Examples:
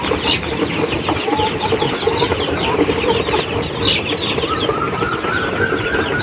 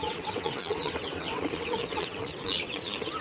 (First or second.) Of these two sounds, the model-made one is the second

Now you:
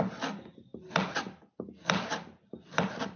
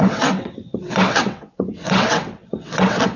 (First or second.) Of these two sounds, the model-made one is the second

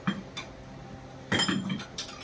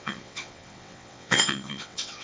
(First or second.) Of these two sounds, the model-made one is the second